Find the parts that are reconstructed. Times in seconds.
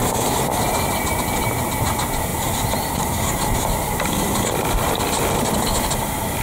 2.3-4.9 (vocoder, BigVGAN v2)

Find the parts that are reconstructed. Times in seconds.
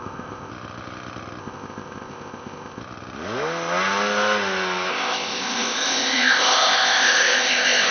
0.0-0.5 (codec, ZipCodec); 1.4-2.8; 4.9-7.9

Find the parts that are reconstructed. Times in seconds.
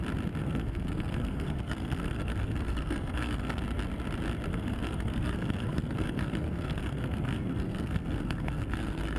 0.4-3.6 (codec, SNAC); 4.5-9.2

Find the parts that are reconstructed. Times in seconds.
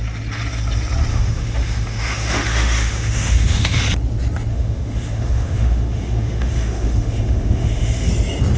1.1-3.8 (autoencoder, DAC-VAE); 4.5-8.1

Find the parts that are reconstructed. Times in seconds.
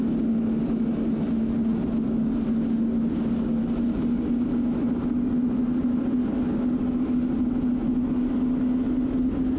none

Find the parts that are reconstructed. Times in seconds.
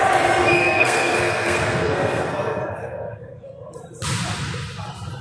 0.6-3.7 (codec, SNAC)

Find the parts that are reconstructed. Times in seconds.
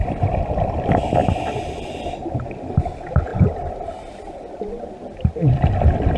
none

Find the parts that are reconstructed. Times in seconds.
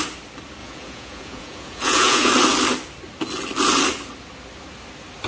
0.6-2.3 (vocoder, Vocos)